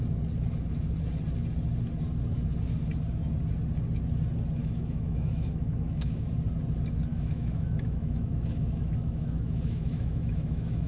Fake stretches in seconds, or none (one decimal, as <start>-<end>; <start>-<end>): 4.6-6.3; 7.1-10.9